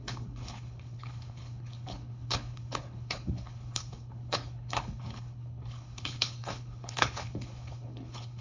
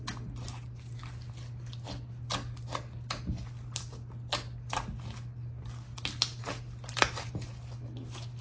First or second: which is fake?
first